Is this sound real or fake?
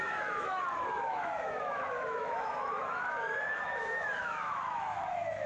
fake